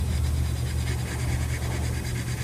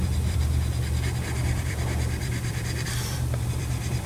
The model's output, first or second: second